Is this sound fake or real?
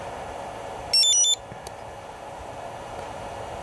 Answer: real